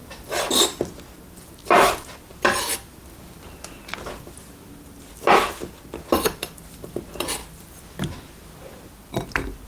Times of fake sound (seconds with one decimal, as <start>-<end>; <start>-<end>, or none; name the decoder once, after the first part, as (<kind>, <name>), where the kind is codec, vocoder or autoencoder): 0.0-0.6 (vocoder, BigVGAN v2)